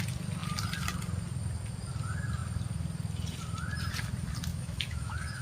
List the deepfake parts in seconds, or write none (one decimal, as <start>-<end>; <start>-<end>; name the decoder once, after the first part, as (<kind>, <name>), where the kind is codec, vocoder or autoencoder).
4.5-5.4 (autoencoder, DAC-VAE)